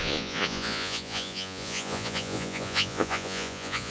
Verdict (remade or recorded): remade